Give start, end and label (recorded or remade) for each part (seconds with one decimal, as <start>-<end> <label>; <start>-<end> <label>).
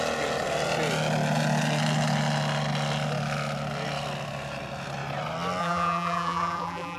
0.0-5.6 recorded; 5.6-7.0 remade